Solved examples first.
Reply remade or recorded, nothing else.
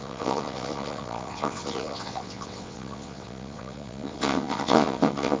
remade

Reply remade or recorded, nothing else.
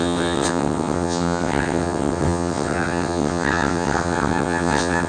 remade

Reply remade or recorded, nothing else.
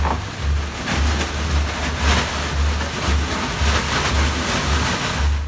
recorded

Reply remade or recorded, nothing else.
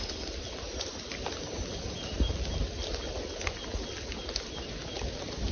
recorded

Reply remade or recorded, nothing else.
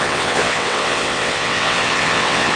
remade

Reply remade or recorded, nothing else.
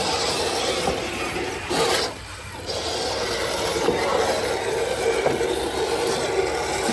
recorded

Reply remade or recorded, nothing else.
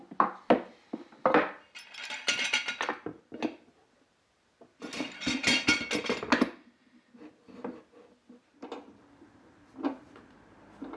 recorded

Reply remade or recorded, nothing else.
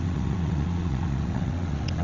remade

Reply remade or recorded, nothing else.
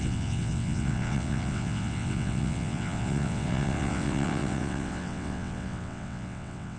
remade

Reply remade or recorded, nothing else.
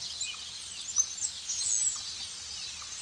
recorded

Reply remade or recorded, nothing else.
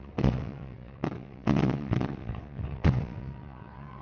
remade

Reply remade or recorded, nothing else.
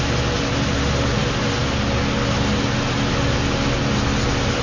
recorded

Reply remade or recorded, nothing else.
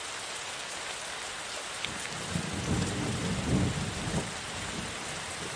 recorded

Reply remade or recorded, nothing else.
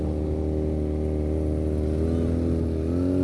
recorded